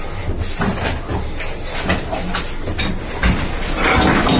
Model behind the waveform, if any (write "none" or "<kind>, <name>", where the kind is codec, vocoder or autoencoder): none